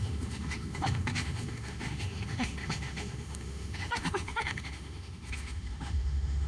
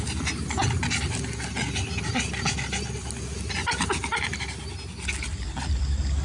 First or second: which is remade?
first